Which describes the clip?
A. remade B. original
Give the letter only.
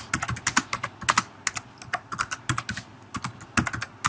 B